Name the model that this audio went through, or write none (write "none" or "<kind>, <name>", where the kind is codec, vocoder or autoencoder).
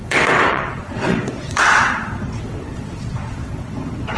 vocoder, WaveNeXt